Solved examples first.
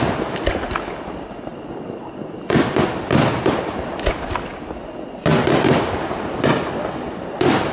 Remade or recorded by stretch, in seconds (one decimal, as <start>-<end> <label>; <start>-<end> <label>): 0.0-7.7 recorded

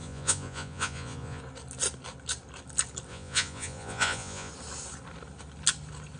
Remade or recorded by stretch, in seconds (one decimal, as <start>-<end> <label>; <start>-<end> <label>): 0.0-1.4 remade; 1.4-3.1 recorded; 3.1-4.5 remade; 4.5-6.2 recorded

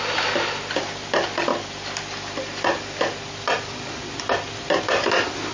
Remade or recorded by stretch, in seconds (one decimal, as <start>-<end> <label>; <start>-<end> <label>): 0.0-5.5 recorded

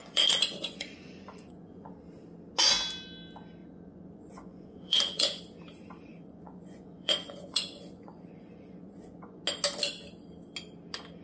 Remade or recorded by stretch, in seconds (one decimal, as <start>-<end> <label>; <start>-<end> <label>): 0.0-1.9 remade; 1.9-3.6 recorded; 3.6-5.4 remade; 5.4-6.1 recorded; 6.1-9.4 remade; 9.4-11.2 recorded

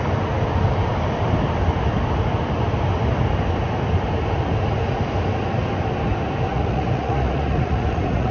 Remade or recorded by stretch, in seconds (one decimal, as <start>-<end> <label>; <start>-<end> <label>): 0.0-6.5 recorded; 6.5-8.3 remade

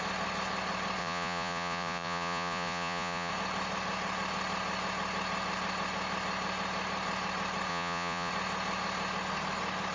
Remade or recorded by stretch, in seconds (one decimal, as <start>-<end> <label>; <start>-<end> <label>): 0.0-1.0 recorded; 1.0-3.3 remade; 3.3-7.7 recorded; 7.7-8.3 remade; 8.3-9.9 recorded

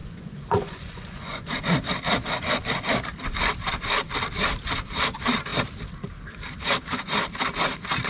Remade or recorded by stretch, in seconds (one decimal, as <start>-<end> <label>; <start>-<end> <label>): 0.0-1.5 remade; 1.5-8.1 recorded